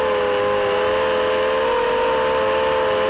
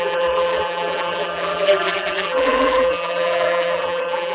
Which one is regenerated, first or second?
second